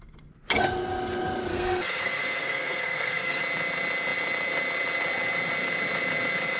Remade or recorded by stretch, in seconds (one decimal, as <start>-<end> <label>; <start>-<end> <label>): 0.0-1.5 recorded; 1.5-3.4 remade; 3.4-6.6 recorded

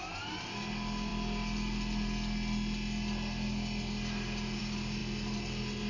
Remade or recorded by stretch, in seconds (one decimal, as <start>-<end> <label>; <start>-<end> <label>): 0.0-5.9 recorded

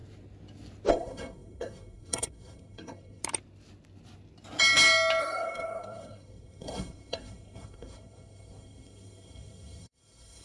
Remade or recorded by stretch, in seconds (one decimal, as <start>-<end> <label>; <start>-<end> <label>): 0.0-0.9 recorded; 0.9-3.2 remade; 3.2-5.2 recorded; 5.2-10.4 remade

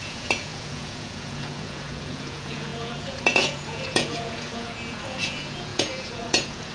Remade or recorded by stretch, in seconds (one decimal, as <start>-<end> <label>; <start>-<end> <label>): 0.0-6.7 remade

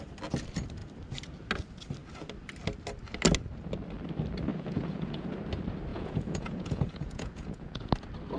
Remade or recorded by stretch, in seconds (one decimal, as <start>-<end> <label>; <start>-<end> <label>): 0.0-4.5 recorded; 4.5-5.3 remade; 5.3-5.9 recorded; 5.9-7.9 remade; 7.9-8.4 recorded

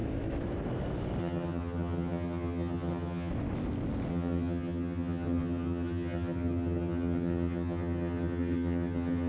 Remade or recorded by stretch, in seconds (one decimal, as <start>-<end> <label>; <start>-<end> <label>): 0.0-1.2 recorded; 1.2-3.3 remade; 3.3-4.1 recorded; 4.1-9.3 remade

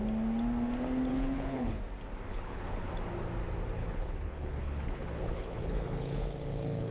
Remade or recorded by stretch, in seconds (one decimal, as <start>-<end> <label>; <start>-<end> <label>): 0.0-1.1 recorded; 1.1-1.8 remade; 1.8-2.3 recorded; 2.3-2.9 remade; 2.9-3.8 recorded; 3.8-6.9 remade